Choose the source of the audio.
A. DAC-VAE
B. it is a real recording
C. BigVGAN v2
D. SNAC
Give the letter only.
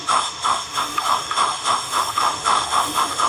A